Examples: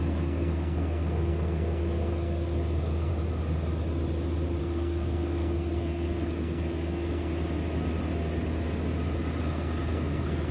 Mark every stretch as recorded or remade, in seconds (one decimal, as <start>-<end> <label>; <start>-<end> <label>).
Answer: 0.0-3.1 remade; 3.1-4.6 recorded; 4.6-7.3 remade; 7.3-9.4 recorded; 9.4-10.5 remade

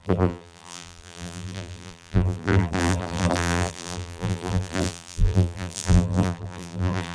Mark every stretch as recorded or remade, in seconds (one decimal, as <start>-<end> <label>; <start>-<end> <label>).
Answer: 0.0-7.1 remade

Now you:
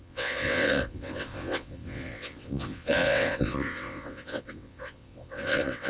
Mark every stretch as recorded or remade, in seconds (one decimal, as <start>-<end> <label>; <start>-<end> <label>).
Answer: 0.0-5.9 remade

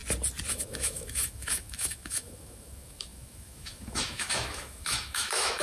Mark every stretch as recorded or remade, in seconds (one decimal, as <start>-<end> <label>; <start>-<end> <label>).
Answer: 0.0-0.5 recorded; 0.5-5.6 remade

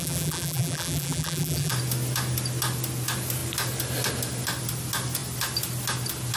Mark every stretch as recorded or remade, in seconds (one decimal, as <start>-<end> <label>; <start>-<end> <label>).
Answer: 0.0-1.7 remade; 1.7-6.4 recorded

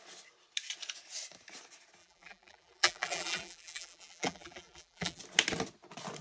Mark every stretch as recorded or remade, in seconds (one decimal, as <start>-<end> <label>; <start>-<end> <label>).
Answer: 0.0-2.0 recorded; 2.0-5.2 remade; 5.2-6.2 recorded

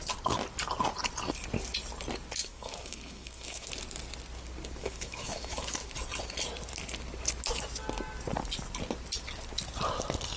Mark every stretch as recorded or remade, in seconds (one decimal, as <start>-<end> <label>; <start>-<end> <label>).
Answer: 0.0-2.4 recorded; 2.4-3.7 remade; 3.7-4.8 recorded; 4.8-5.9 remade; 5.9-10.4 recorded

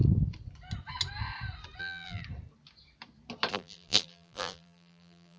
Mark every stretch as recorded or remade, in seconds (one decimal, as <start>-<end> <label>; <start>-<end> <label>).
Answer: 0.0-1.8 recorded; 1.8-2.2 remade; 2.2-3.5 recorded; 3.5-5.4 remade